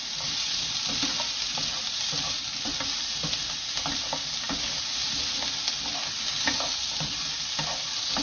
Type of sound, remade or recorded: recorded